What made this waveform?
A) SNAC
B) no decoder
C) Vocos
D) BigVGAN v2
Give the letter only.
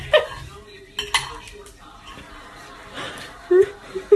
B